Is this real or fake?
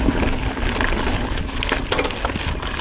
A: real